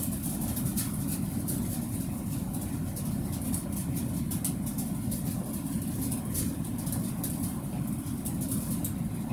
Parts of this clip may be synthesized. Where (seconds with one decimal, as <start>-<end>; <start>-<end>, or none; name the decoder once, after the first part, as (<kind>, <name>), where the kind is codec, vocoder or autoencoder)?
none